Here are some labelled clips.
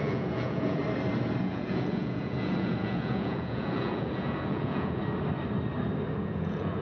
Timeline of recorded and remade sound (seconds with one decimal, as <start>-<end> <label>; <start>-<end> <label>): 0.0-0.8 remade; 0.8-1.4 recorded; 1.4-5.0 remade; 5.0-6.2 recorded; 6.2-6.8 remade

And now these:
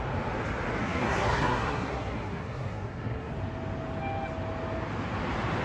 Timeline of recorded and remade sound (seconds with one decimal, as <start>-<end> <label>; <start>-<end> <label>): 0.0-0.8 recorded; 0.8-3.3 remade; 3.3-5.6 recorded

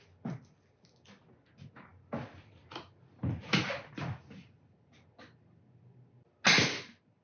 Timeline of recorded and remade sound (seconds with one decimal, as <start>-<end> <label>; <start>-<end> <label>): 0.0-7.2 recorded

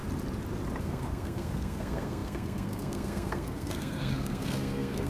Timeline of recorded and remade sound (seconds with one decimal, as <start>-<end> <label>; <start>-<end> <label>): 0.0-0.8 recorded; 0.8-5.1 remade

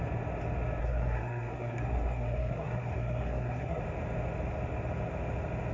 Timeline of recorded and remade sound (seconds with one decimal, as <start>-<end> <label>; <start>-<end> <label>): 0.0-0.8 recorded; 0.8-3.8 remade; 3.8-5.7 recorded